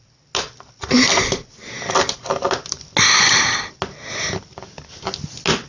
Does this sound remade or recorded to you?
recorded